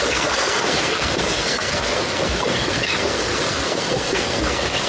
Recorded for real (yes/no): no